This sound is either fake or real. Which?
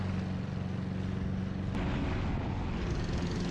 real